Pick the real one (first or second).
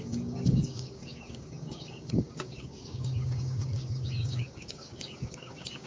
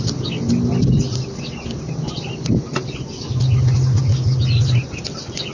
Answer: second